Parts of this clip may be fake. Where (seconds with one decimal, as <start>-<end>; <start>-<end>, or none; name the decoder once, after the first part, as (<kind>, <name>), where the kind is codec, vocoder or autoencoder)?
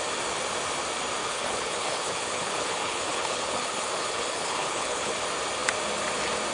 1.2-5.1 (codec, HILCodec)